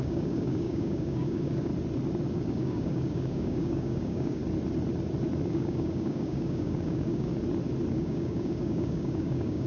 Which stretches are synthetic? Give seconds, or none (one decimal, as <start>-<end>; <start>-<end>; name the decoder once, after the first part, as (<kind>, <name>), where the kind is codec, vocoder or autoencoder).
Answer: 0.0-1.7 (codec, DAC); 2.3-4.4; 5.5-7.3; 7.9-9.7